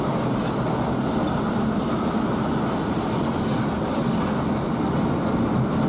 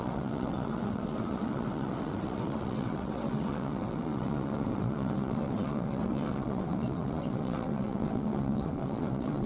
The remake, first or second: second